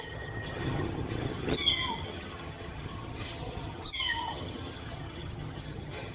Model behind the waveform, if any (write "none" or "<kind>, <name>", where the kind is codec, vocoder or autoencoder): vocoder, HiFi-GAN